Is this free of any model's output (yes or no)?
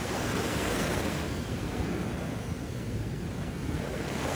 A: no